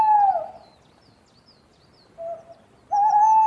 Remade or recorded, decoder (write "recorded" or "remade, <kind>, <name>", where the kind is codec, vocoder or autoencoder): recorded